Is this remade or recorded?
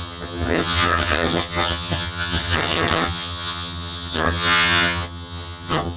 remade